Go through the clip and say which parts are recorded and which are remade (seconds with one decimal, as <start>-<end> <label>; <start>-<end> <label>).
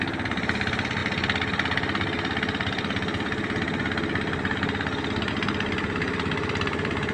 0.0-7.1 recorded